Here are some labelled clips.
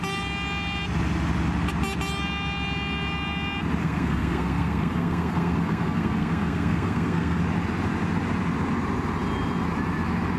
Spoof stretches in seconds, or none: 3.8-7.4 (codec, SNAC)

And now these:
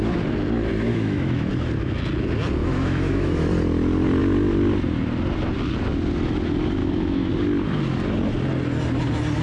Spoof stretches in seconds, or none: 0.9-1.5 (autoencoder, DAC-VAE); 2.6-3.5; 6.8-7.3

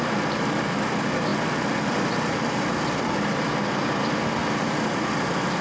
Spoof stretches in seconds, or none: 1.3-4.0 (vocoder, BigVGAN v2); 4.4-5.6

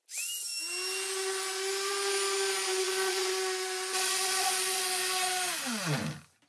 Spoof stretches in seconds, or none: 2.7-4.8 (vocoder, Vocos)

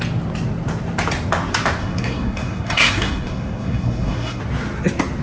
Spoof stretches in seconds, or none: 1.8-4.4 (codec, SNAC)

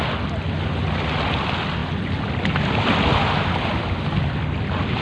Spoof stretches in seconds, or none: none